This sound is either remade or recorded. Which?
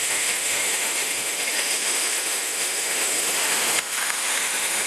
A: remade